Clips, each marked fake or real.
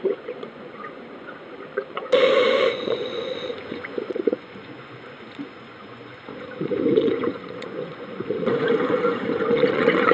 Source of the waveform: fake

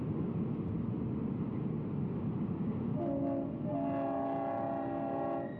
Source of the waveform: real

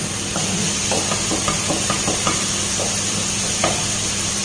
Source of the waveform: real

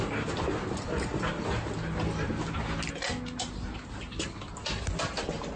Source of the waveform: real